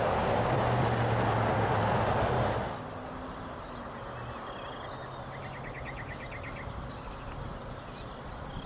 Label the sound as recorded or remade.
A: recorded